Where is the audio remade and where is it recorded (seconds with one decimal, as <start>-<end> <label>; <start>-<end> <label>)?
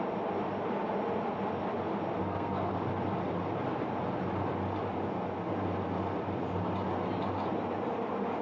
0.0-2.2 recorded; 2.2-2.7 remade; 2.7-8.4 recorded